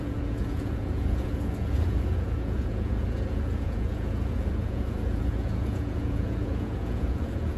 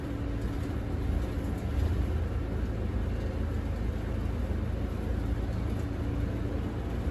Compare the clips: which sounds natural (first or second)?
second